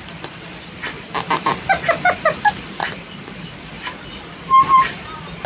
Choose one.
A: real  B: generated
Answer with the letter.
B